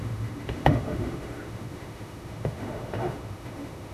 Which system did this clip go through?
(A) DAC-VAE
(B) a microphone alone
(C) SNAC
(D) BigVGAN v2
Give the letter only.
A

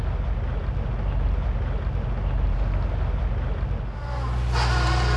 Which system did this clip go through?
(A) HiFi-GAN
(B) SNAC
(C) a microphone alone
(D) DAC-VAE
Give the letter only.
C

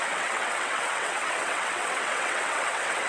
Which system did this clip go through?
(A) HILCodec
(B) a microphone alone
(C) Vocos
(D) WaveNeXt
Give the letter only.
D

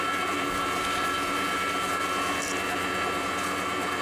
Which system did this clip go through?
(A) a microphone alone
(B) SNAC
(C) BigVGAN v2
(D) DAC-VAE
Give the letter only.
A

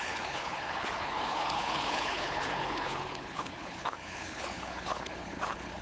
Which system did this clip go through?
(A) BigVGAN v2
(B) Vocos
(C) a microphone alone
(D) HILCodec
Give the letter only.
D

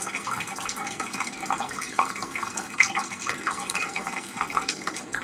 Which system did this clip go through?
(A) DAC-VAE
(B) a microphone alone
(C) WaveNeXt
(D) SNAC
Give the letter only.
D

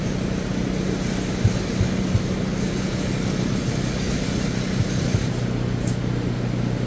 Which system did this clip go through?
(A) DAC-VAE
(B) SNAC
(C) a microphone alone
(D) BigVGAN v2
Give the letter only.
C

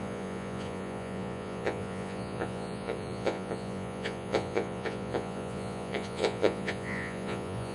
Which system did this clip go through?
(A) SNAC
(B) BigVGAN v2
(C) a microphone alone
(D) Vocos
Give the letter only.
D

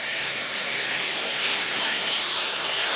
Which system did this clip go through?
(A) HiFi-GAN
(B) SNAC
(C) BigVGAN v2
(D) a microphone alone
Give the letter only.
B